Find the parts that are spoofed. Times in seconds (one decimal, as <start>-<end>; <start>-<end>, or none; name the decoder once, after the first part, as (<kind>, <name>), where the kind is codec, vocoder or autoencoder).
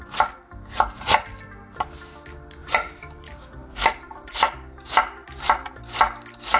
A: 2.6-5.7 (vocoder, BigVGAN v2)